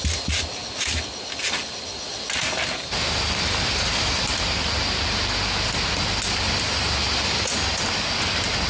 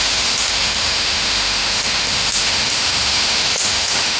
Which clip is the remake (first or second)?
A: second